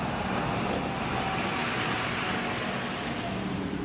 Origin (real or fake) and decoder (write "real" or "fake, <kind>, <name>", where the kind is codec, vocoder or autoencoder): real